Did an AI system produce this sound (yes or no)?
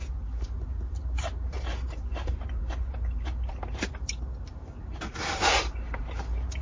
yes